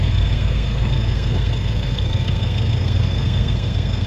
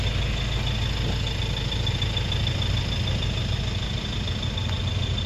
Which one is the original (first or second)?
second